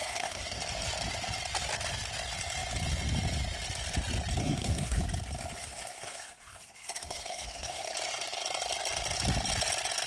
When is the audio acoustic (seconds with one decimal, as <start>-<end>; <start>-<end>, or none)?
0.6-4.4; 5.0-5.6; 7.9-10.1